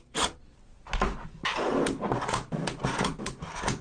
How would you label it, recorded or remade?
recorded